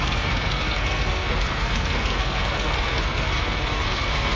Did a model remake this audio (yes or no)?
yes